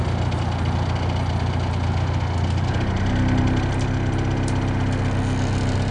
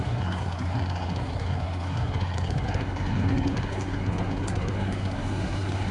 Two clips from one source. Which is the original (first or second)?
first